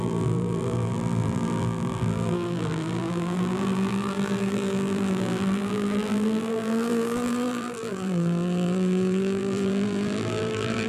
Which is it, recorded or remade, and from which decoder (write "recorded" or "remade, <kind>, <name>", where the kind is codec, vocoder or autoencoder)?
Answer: remade, vocoder, BigVGAN v2